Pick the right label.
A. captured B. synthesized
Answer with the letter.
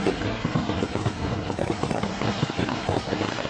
B